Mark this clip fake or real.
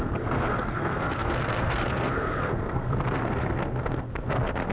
fake